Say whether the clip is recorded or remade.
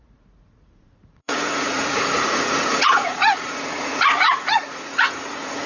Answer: remade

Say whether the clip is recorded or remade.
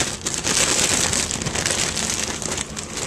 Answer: recorded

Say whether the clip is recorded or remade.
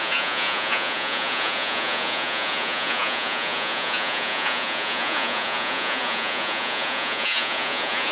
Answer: remade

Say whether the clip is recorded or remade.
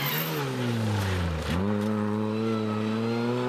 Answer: recorded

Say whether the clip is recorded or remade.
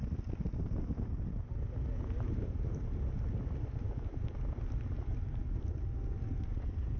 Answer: recorded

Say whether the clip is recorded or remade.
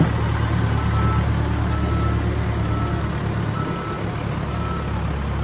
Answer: recorded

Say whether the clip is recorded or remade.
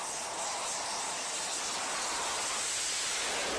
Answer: recorded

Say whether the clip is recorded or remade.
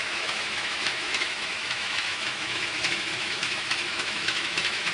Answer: remade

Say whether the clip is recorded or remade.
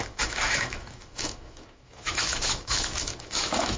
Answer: remade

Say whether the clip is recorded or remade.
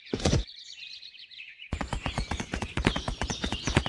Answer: remade